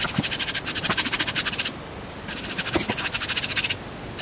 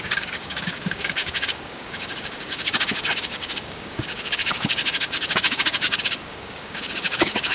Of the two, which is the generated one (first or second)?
second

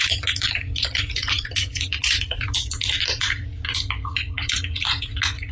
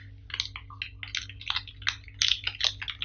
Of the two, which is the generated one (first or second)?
first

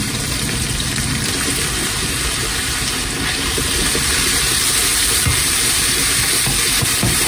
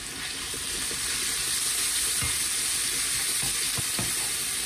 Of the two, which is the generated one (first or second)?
first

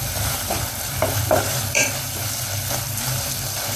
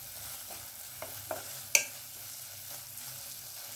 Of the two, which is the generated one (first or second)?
first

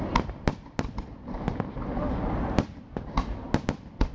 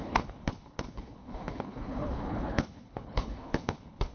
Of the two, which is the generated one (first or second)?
second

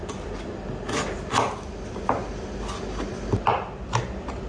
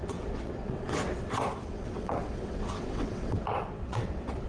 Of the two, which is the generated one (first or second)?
second